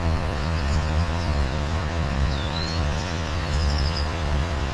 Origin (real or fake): fake